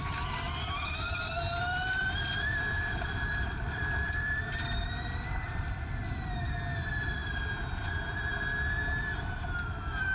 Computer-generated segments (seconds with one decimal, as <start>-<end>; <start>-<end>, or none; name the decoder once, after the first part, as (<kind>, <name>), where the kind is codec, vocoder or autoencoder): 1.6-6.0 (vocoder, BigVGAN v2)